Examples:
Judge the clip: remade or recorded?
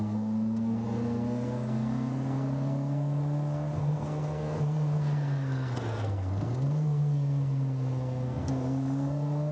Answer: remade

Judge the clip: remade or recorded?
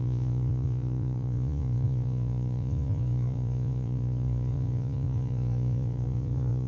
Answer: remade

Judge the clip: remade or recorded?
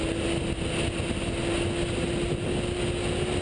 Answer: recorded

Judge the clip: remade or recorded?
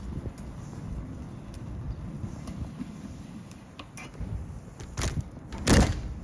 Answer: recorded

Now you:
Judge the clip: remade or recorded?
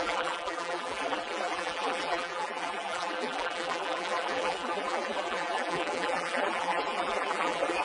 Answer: remade